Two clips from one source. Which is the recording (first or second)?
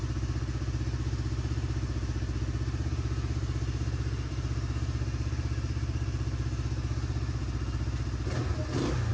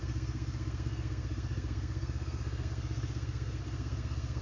first